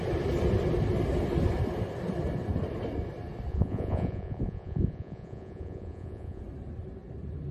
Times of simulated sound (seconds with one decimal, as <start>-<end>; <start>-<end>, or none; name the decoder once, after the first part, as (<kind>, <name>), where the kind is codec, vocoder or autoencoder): 3.5-6.4 (vocoder, Vocos)